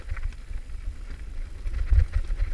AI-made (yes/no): no